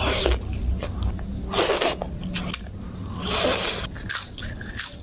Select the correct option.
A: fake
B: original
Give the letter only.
B